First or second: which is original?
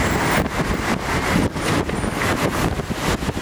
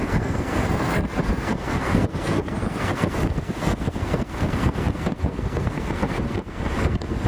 first